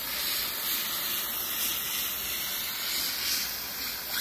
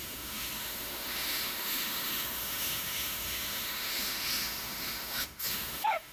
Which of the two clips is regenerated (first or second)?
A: second